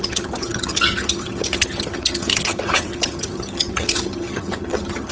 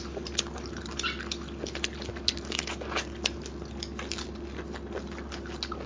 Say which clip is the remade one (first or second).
first